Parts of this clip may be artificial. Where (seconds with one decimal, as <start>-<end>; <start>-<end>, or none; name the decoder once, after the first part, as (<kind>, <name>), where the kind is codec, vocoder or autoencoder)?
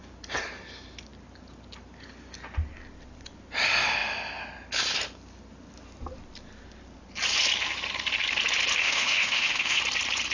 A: 8.8-9.8 (autoencoder, DAC-VAE)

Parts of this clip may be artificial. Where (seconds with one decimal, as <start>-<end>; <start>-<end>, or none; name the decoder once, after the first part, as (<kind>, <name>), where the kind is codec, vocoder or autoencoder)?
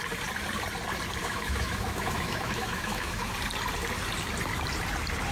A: 1.2-3.3 (autoencoder, DAC-VAE)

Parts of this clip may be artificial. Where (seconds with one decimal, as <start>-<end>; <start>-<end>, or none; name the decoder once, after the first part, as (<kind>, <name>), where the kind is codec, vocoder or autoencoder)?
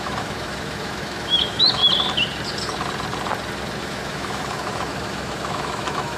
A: 0.0-1.8 (autoencoder, DAC-VAE); 3.8-6.2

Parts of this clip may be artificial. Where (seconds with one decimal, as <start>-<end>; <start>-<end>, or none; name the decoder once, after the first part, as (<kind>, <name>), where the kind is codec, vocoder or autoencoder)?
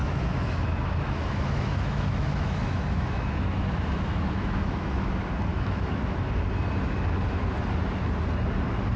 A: 0.0-5.1 (autoencoder, DAC-VAE); 5.5-6.3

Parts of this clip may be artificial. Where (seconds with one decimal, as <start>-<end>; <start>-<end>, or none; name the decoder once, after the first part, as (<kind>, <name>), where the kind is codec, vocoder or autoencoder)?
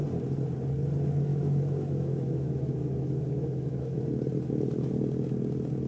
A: 1.3-4.0 (autoencoder, DAC-VAE)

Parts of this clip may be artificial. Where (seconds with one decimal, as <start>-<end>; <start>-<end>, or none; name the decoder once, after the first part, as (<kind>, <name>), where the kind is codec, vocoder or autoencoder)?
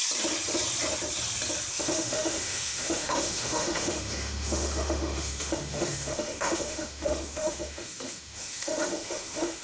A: 1.7-9.6 (autoencoder, DAC-VAE)